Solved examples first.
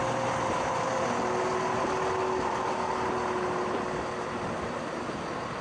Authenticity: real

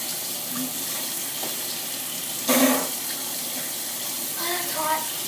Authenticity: real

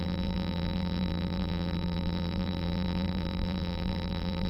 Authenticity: fake